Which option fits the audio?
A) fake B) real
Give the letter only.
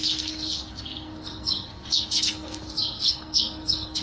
A